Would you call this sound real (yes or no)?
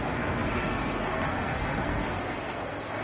no